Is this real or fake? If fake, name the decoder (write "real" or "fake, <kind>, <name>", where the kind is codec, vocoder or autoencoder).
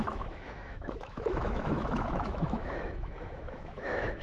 fake, autoencoder, DAC-VAE